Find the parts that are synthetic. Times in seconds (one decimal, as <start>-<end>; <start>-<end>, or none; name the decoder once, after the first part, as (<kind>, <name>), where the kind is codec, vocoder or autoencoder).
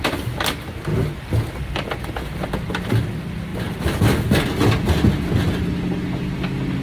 none